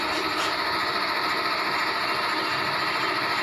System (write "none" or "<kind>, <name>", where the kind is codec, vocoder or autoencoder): vocoder, BigVGAN v2